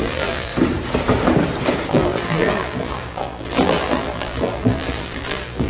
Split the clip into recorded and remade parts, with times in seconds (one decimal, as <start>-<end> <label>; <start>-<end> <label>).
0.0-0.5 remade; 0.5-1.9 recorded; 1.9-5.7 remade